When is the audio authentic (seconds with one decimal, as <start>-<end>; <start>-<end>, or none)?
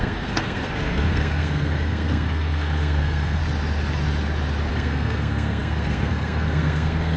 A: 3.4-4.7